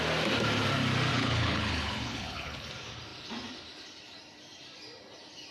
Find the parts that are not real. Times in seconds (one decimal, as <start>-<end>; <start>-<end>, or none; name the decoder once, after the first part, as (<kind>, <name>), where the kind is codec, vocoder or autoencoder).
1.1-2.7 (codec, HILCodec)

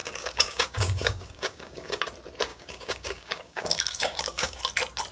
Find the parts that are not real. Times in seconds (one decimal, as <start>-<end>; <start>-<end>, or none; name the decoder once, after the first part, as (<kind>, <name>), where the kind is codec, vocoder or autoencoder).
0.0-2.0 (codec, DAC); 2.5-4.6

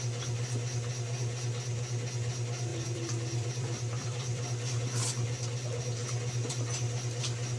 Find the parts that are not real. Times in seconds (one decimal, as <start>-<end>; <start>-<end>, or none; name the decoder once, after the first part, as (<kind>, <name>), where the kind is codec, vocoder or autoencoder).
2.7-4.7 (vocoder, BigVGAN v2)

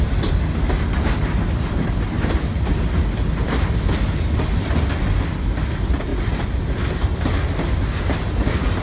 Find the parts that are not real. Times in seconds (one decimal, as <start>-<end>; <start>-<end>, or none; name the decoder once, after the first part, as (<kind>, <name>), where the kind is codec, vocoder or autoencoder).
none

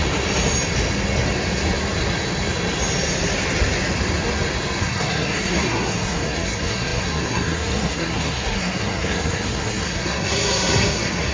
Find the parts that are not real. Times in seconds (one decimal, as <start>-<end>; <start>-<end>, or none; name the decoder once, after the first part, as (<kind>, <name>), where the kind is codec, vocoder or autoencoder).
4.8-11.3 (codec, SNAC)

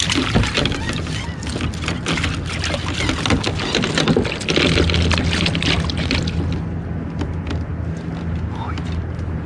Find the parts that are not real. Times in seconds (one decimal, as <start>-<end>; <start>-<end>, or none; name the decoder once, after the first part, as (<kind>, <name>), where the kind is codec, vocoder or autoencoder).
none